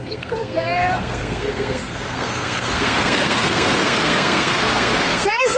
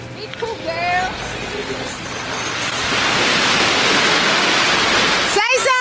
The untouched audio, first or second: second